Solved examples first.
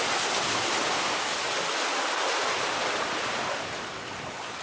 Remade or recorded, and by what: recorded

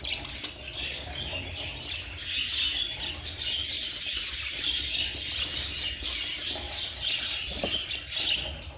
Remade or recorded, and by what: recorded